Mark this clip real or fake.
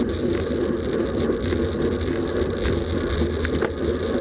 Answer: real